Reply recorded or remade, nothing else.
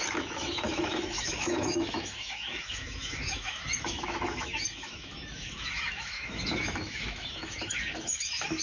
remade